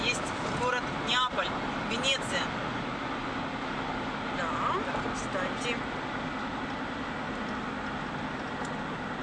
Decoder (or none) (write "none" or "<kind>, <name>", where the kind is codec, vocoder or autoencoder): none